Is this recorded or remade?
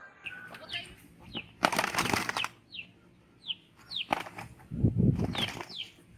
remade